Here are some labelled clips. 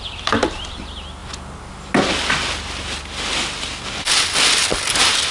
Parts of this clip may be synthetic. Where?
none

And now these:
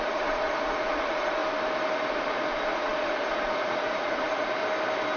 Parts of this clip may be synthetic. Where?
0.0-1.4 (vocoder, Vocos); 2.1-4.6

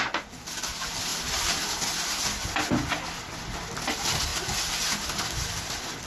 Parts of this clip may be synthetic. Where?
none